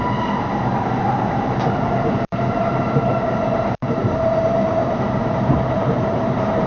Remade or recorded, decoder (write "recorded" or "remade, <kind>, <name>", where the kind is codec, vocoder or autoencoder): remade, vocoder, BigVGAN v2